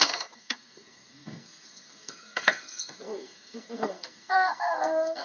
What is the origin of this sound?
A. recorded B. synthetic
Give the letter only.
B